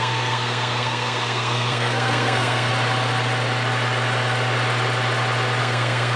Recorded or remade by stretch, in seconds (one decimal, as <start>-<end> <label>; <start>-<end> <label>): 0.0-2.7 remade; 2.7-5.6 recorded; 5.6-6.2 remade